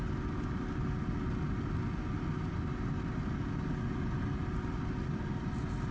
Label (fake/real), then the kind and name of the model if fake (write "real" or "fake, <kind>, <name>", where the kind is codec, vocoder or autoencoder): real